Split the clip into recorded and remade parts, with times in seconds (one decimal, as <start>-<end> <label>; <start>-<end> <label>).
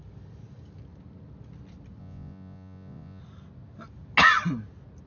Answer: 0.0-2.0 recorded; 2.0-3.2 remade; 3.2-5.1 recorded